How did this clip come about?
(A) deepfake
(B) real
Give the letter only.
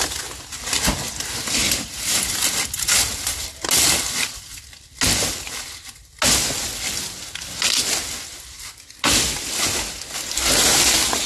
B